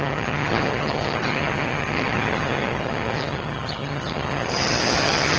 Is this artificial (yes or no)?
yes